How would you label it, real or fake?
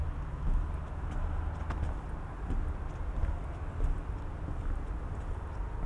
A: real